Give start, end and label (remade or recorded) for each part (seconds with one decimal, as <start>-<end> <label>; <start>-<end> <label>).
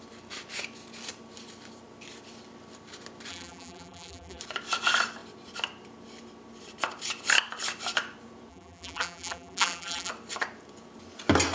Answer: 0.0-3.3 recorded; 3.3-4.4 remade; 4.4-8.5 recorded; 8.5-10.1 remade; 10.1-11.5 recorded